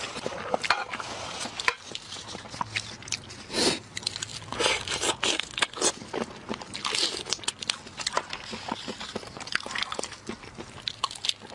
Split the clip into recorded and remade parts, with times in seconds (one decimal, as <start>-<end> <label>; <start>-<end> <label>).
0.0-11.5 recorded